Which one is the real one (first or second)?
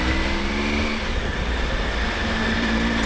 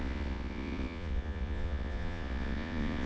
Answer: first